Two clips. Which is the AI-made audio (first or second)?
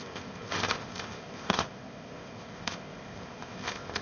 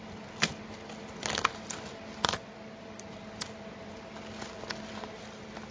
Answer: first